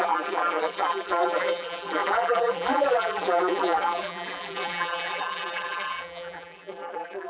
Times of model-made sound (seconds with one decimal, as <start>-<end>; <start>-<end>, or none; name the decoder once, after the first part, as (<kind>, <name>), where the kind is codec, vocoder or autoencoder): 0.0-7.3 (vocoder, BigVGAN v2)